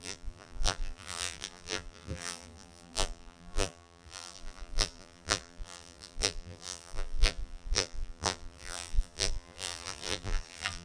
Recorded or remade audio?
remade